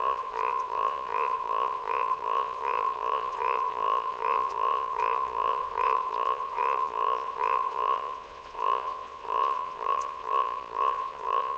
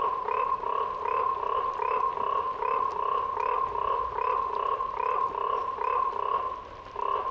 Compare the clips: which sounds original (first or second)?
second